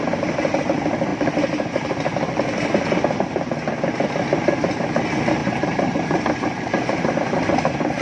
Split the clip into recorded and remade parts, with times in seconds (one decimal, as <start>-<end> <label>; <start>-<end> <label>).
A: 0.0-5.4 recorded; 5.4-7.1 remade; 7.1-8.0 recorded